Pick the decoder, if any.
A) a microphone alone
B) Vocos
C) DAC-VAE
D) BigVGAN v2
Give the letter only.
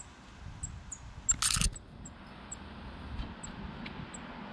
A